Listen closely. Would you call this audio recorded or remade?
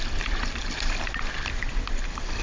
recorded